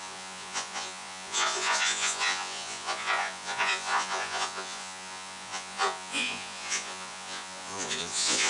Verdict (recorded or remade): remade